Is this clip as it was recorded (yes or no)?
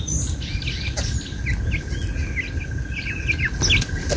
yes